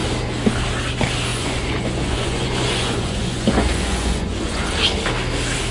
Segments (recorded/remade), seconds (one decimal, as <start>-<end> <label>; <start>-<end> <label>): 0.0-1.3 recorded; 1.3-4.7 remade; 4.7-5.7 recorded